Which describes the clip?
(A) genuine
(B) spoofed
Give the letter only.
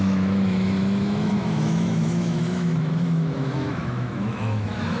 B